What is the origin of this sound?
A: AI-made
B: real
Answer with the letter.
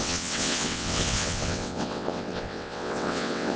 A